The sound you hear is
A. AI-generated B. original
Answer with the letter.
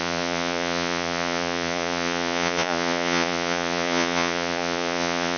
A